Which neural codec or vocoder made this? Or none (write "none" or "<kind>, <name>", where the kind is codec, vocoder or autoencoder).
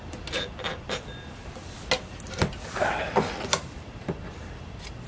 none